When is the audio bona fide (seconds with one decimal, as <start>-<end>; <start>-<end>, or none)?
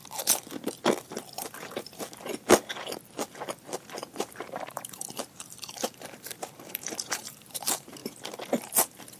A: 0.0-1.4; 2.3-3.6; 8.0-8.5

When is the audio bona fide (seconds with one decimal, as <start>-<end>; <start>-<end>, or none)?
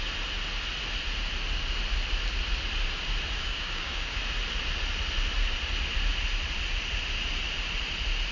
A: 0.0-3.4; 4.2-8.3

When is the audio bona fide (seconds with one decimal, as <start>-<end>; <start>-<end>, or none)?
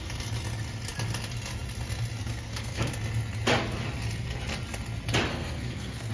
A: 0.0-2.2; 2.9-5.3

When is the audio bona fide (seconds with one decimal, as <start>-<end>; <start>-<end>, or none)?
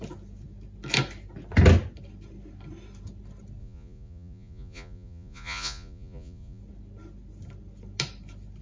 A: 0.0-3.6; 6.6-8.6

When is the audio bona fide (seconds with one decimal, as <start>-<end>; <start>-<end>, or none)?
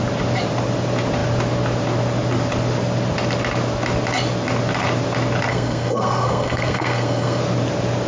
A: 0.0-5.5; 7.4-8.1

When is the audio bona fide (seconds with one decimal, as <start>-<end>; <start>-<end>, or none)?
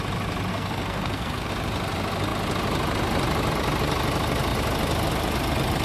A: 0.0-0.5; 1.5-5.8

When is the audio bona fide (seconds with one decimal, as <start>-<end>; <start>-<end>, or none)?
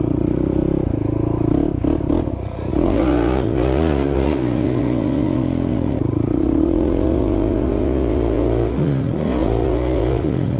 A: 0.6-2.3